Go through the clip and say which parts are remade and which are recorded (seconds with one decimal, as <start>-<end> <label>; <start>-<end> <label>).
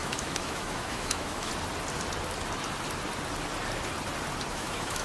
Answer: 0.0-1.5 remade; 1.5-4.5 recorded; 4.5-5.0 remade